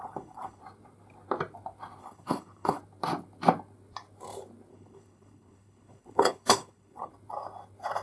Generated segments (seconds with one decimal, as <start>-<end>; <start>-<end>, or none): 0.0-0.6; 2.0-2.8; 4.7-7.1